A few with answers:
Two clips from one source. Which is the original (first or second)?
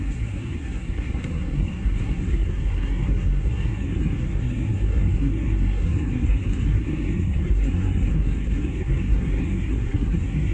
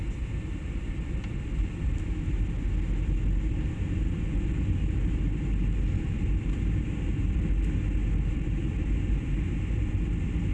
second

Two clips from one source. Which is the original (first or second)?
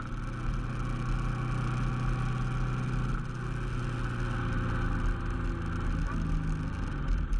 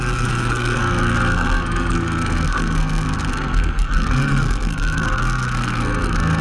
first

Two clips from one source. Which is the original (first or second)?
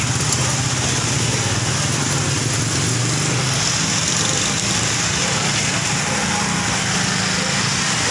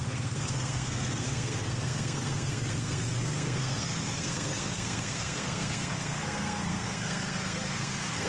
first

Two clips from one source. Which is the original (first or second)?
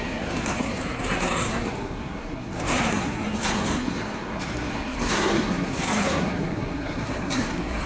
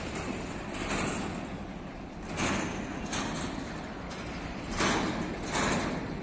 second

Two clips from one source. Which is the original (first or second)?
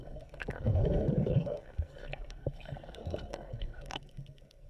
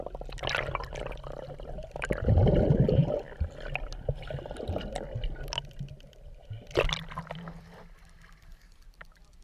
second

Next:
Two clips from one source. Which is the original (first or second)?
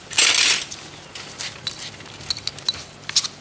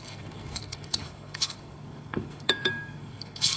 first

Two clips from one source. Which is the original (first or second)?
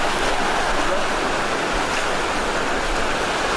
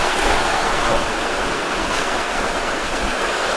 first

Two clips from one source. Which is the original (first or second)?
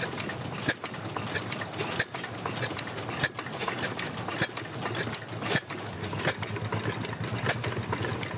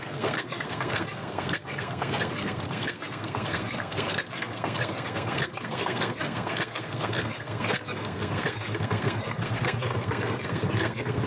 first